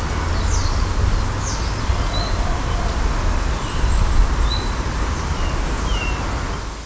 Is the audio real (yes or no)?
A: yes